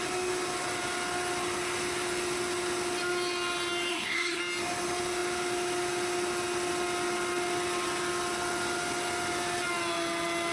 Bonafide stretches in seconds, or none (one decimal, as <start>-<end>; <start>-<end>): 0.0-3.9; 4.4-10.5